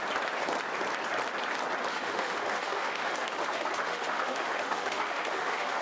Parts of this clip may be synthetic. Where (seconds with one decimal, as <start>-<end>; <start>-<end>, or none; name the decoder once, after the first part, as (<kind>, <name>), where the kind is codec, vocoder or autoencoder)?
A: 1.9-5.8 (autoencoder, DAC-VAE)